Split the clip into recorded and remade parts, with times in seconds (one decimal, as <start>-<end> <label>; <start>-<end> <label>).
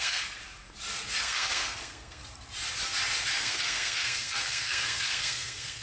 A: 0.0-0.4 remade; 0.4-1.2 recorded; 1.2-2.2 remade; 2.2-3.4 recorded; 3.4-5.8 remade